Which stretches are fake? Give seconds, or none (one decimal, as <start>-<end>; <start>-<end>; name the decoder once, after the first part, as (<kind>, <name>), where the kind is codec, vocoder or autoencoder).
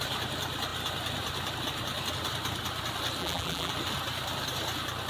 3.2-3.7 (vocoder, BigVGAN v2)